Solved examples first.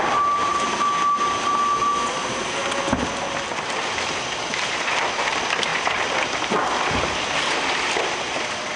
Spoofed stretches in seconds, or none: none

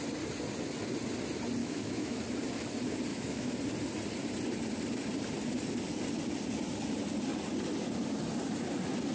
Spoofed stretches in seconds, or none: 1.6-2.2 (autoencoder, DAC-VAE); 3.1-3.6

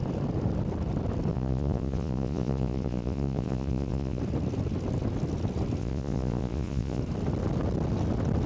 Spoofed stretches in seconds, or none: 1.3-4.2 (vocoder, Vocos); 5.8-7.0

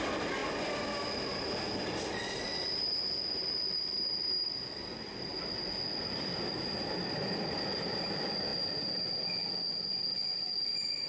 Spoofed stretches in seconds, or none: 0.0-0.4 (vocoder, BigVGAN v2); 2.2-5.3; 6.0-8.5; 9.1-11.1

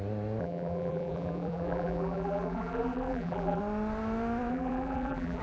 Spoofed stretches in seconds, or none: 0.4-3.6 (vocoder, BigVGAN v2); 4.5-5.4

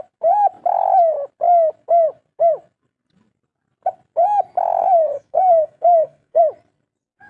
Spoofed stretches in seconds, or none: 4.8-6.4 (codec, SNAC)

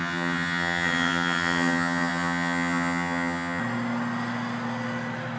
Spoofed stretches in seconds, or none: 0.0-3.6 (vocoder, HiFi-GAN)